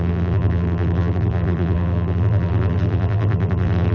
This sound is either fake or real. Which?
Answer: fake